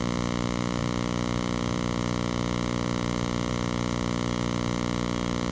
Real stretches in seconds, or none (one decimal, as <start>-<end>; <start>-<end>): 0.0-5.5